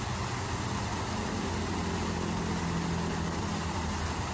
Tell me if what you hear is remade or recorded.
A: recorded